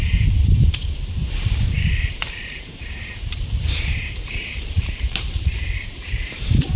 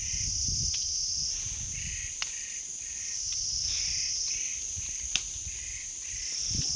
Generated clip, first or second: first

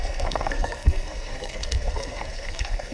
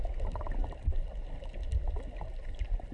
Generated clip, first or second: first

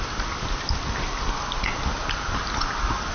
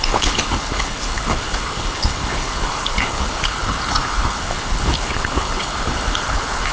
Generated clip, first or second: second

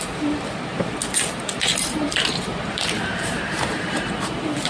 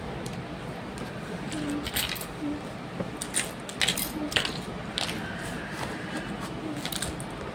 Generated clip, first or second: first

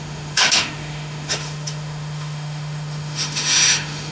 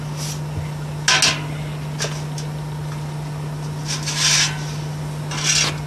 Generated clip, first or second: first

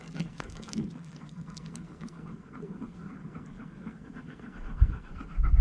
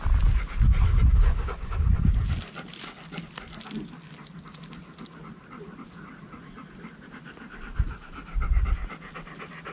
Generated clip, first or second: first